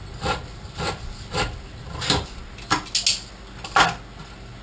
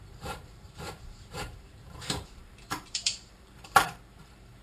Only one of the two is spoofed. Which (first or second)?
second